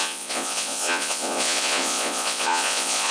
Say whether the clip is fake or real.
fake